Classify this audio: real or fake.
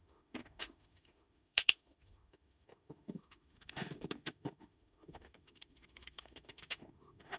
fake